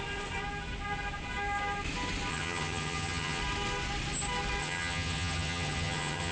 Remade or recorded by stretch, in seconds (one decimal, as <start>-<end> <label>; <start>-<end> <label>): 0.0-2.3 recorded; 2.3-3.4 remade; 3.4-4.6 recorded; 4.6-6.3 remade